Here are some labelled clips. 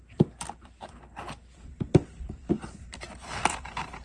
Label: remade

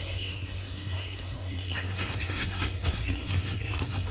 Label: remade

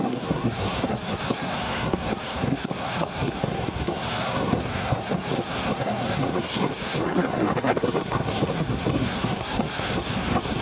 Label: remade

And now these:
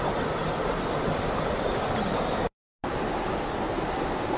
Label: recorded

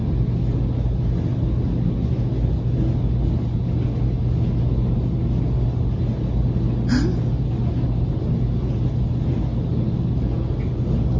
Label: recorded